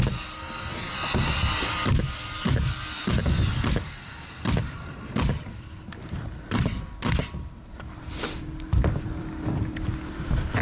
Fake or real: fake